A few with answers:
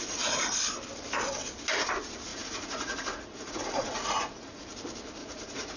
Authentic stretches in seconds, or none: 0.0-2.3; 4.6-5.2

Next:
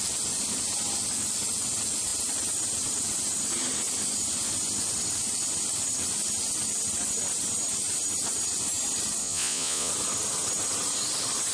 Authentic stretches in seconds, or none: 0.0-9.2; 9.9-11.5

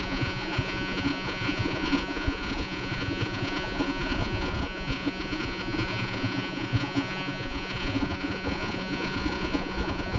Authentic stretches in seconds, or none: none

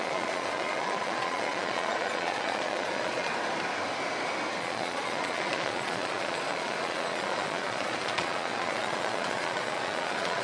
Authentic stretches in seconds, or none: 3.3-4.6

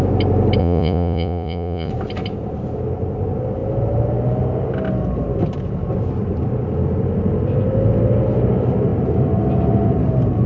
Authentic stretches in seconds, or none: 0.0-0.6; 1.9-10.5

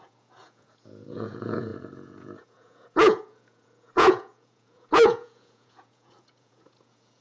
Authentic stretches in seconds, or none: none